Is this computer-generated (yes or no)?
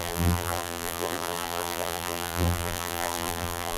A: yes